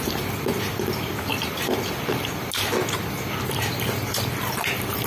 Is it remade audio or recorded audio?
recorded